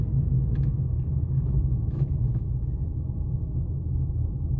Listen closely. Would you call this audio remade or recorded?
remade